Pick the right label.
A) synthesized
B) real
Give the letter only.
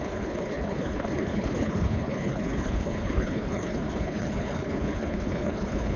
A